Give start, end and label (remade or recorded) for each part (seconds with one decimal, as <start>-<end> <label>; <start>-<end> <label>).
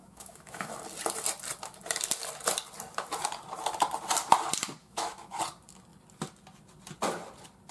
0.0-0.7 remade; 0.7-4.8 recorded; 4.8-5.4 remade; 5.4-7.7 recorded